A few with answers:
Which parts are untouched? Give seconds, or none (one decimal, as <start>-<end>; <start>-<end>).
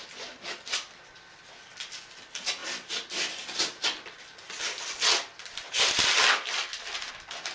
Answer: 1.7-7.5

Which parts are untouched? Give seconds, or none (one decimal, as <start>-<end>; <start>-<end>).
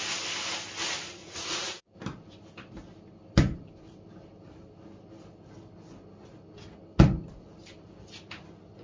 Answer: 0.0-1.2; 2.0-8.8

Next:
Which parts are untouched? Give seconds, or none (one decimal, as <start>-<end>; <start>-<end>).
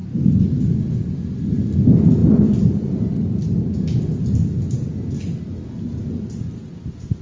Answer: 0.0-7.2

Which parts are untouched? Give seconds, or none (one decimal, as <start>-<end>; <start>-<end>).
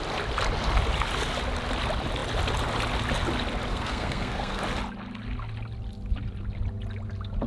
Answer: 0.0-3.7; 4.6-7.5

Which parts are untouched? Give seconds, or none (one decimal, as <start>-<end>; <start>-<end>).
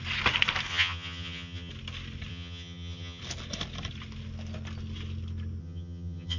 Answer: 0.0-0.7; 1.7-2.3; 3.2-5.6